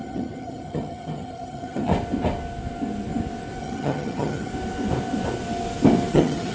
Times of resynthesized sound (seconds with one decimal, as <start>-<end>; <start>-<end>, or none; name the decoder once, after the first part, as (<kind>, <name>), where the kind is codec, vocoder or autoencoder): 0.0-1.9 (vocoder, HiFi-GAN); 3.6-4.5; 6.1-6.5